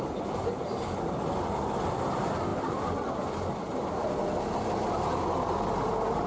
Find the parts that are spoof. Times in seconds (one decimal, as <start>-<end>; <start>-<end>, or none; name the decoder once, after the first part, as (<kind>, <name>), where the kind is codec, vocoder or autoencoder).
none

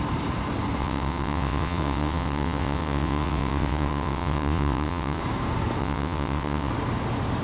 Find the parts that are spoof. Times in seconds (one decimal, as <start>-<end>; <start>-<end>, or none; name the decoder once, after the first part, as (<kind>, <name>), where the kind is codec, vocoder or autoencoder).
0.8-5.2 (vocoder, WaveNeXt); 5.8-6.7

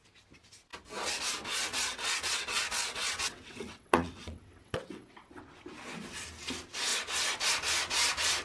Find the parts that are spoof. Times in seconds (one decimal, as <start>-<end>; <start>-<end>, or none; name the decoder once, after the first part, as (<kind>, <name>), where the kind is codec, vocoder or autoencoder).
1.7-5.4 (vocoder, WaveNeXt)

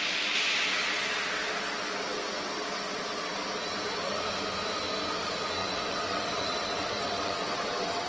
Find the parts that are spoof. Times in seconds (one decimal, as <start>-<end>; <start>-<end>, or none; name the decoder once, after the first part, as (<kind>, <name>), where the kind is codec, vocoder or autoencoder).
5.6-8.1 (vocoder, WaveNeXt)

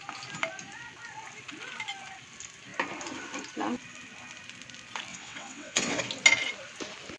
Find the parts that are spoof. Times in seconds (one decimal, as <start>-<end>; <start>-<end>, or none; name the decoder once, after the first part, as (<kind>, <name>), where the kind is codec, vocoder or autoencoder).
5.1-6.0 (vocoder, WaveNeXt)

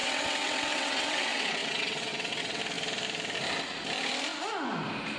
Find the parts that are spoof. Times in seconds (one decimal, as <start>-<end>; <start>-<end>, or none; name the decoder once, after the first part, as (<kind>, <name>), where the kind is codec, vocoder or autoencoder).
0.0-2.6 (vocoder, WaveNeXt)

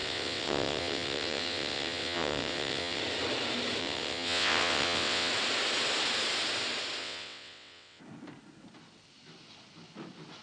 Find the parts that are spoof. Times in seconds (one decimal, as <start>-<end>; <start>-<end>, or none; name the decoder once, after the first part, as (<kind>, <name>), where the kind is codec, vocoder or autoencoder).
0.0-3.0 (vocoder, WaveNeXt); 3.8-5.3; 7.0-8.0

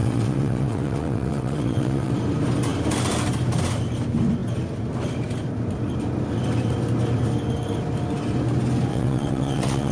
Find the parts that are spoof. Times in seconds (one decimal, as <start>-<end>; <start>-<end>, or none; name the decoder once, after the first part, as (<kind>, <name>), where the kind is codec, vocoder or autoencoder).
0.0-2.1 (vocoder, WaveNeXt); 8.9-9.9